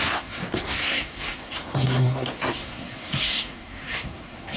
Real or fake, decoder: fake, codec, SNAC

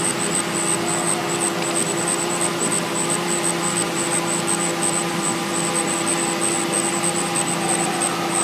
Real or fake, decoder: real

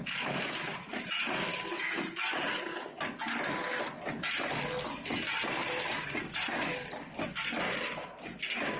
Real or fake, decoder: real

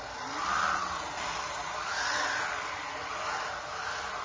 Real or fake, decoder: real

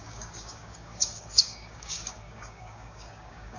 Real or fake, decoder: fake, codec, DAC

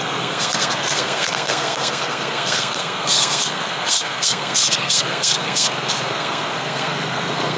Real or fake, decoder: fake, codec, SNAC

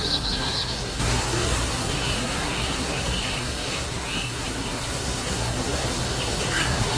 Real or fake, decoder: fake, codec, SNAC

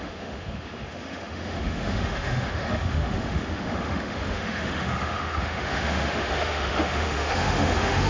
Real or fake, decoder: fake, autoencoder, DAC-VAE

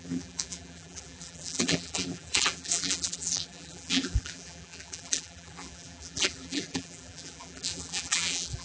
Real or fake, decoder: fake, vocoder, BigVGAN v2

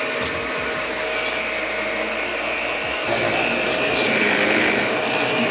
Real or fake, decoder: real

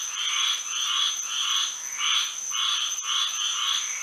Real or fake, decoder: real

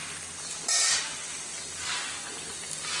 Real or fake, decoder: real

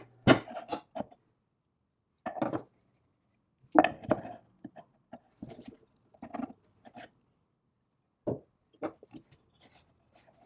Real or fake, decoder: real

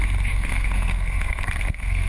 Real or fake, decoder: fake, codec, SNAC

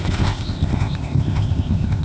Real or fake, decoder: fake, codec, ZipCodec